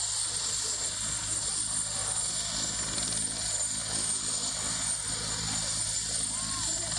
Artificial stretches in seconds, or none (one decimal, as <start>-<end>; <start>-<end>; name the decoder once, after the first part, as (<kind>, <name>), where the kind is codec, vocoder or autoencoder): none